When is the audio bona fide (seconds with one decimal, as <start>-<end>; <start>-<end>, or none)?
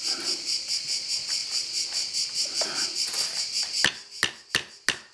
0.0-5.1